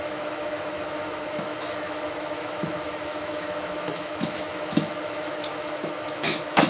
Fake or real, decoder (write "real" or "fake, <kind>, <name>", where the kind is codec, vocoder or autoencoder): fake, autoencoder, DAC-VAE